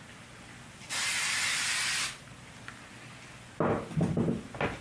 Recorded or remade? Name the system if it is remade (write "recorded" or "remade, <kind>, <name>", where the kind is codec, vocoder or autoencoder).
recorded